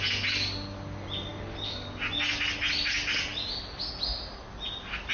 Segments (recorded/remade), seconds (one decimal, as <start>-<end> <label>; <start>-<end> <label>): 0.0-5.1 recorded